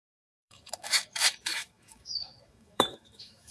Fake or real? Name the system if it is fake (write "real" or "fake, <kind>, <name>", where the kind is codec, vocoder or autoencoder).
fake, autoencoder, DAC-VAE